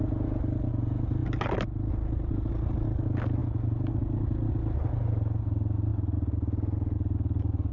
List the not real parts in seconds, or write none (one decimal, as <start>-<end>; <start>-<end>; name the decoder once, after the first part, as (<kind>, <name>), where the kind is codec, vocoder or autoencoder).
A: none